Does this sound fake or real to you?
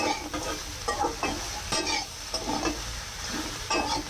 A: real